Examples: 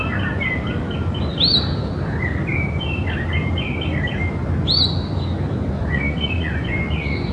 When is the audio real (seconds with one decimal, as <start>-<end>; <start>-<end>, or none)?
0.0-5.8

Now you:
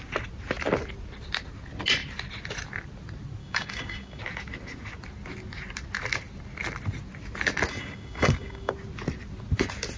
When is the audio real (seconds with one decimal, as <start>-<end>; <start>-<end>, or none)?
0.0-3.4; 4.2-7.7; 8.7-10.0

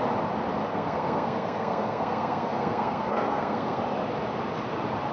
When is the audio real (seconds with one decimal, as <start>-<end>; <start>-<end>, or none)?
0.0-0.7; 3.8-5.1

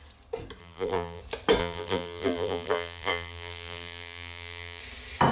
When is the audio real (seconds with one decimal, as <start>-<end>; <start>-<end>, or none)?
0.0-0.6; 1.2-1.6; 4.8-5.3

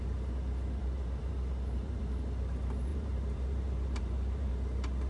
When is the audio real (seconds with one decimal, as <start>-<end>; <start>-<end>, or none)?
0.0-0.8; 2.0-2.9; 4.5-5.1